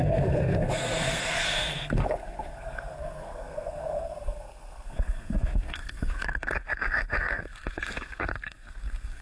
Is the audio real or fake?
fake